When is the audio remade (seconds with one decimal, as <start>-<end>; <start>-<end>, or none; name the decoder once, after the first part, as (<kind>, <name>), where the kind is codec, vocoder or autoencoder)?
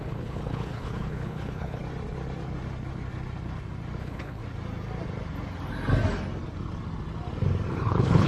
0.0-1.8 (codec, HILCodec); 4.0-4.4; 7.7-8.3